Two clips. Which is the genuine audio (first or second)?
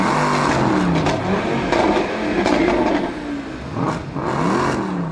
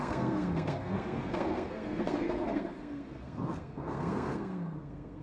first